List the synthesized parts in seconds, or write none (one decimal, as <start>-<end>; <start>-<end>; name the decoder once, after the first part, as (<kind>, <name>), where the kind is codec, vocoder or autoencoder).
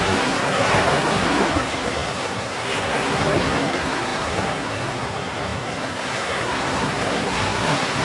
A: 0.0-8.0 (codec, SNAC)